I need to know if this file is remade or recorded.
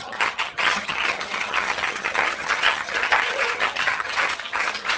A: remade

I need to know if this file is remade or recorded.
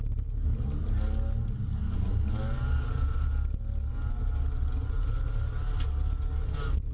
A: recorded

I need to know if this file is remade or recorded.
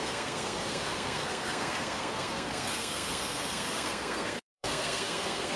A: remade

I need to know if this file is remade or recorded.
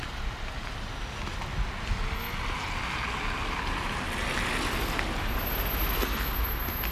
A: recorded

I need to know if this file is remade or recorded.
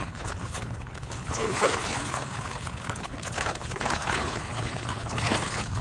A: remade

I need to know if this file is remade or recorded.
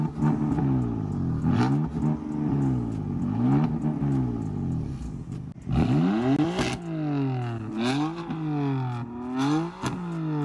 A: recorded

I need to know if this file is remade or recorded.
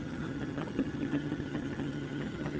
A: remade